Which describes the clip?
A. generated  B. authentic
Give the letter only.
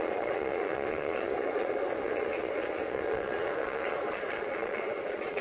A